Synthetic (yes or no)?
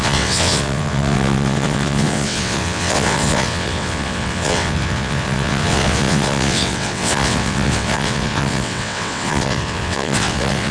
yes